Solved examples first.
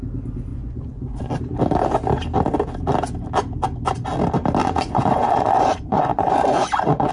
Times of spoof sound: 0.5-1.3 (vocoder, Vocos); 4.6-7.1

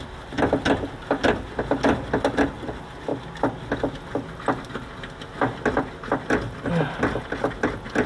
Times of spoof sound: none

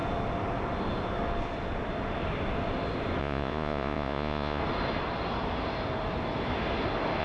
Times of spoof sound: 3.2-4.6 (vocoder, Vocos)

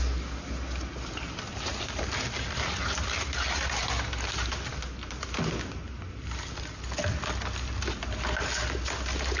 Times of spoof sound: none

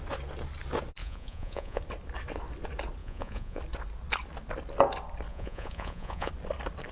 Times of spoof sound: 1.0-1.8 (vocoder, Vocos); 3.0-3.6; 5.3-6.3

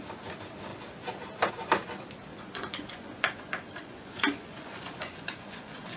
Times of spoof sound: 2.3-6.0 (vocoder, Vocos)

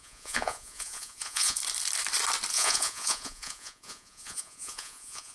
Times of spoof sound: 0.0-1.6 (vocoder, Vocos); 2.5-5.3